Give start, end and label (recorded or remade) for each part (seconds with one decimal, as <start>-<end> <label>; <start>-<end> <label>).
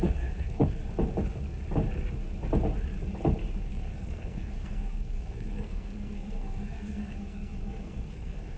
0.0-0.8 remade; 0.8-3.6 recorded; 3.6-8.6 remade